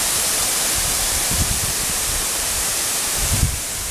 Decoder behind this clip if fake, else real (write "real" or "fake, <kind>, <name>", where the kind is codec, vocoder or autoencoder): fake, vocoder, BigVGAN v2